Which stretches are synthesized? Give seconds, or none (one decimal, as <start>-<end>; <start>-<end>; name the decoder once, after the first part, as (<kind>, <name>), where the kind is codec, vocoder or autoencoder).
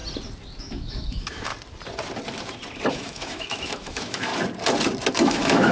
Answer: 0.6-1.5 (autoencoder, DAC-VAE); 2.9-4.3; 5.1-5.7